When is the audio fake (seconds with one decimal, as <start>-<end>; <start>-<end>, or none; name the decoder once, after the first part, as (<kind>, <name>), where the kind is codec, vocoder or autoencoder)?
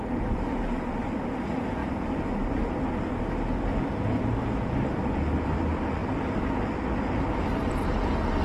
none